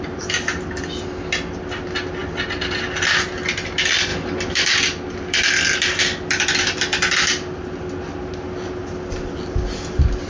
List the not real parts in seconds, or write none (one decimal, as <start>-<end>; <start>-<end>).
none